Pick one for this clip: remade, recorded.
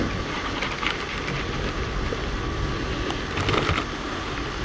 recorded